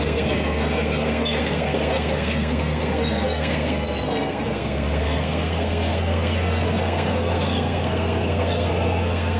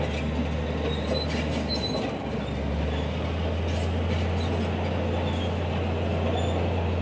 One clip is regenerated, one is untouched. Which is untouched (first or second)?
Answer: second